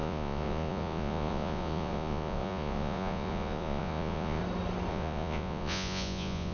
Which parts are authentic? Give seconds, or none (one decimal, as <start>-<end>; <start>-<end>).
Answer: 4.4-4.9